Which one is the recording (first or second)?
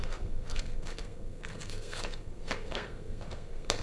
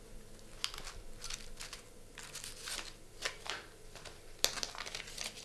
second